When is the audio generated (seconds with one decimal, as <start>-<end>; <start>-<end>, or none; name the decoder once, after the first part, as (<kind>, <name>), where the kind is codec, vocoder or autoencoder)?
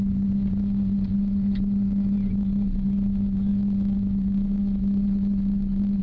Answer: 3.5-6.0 (autoencoder, DAC-VAE)